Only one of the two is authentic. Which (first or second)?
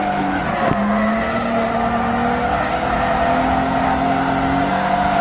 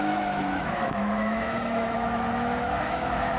first